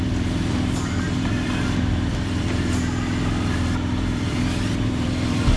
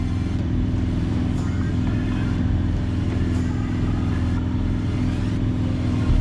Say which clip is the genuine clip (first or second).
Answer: second